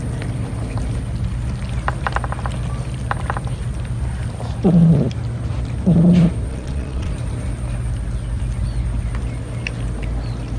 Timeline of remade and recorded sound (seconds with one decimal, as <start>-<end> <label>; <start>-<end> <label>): 0.0-6.5 recorded; 6.5-7.1 remade; 7.1-10.6 recorded